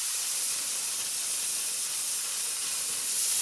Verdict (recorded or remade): recorded